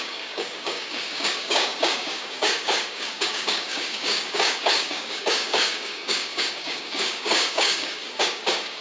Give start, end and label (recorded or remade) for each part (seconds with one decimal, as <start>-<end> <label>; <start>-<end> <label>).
0.0-8.8 remade